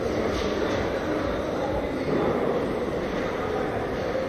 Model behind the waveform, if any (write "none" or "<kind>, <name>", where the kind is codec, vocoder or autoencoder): none